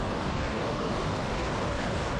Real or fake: fake